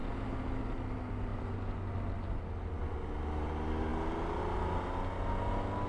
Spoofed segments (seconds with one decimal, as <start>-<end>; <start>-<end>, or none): none